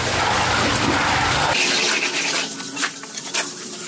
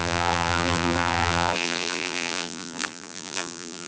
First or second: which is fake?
second